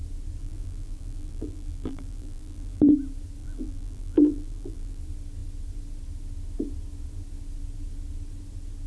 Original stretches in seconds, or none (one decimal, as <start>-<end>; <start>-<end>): 0.0-0.4; 2.8-3.4; 5.0-8.9